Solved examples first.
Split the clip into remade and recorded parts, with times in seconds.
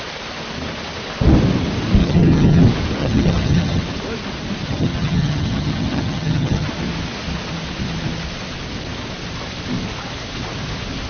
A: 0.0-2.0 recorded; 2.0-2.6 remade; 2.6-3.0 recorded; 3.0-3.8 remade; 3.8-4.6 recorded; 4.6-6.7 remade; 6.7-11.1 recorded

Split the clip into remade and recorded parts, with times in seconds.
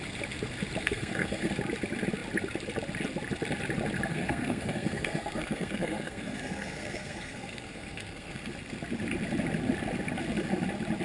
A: 0.0-0.8 recorded; 0.8-1.5 remade; 1.5-4.1 recorded; 4.1-8.5 remade; 8.5-11.0 recorded